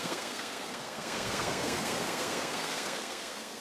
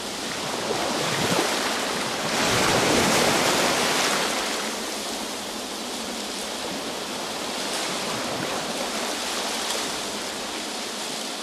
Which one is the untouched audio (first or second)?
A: second